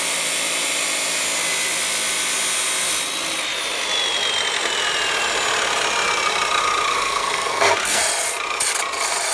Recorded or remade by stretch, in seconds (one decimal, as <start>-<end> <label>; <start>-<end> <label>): 0.0-6.9 recorded; 6.9-8.0 remade; 8.0-9.3 recorded